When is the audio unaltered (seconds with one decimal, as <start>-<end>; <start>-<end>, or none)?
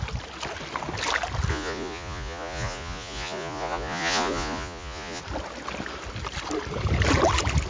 0.0-1.5; 5.2-7.7